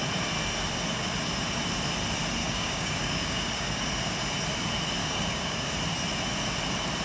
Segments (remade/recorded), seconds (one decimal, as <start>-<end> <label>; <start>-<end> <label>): 0.0-2.4 recorded; 2.4-3.8 remade; 3.8-5.0 recorded; 5.0-5.7 remade; 5.7-7.0 recorded